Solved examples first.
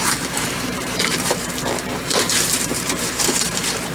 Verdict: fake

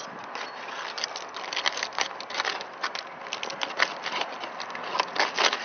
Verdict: real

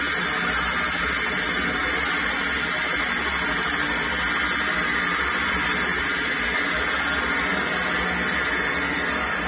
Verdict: real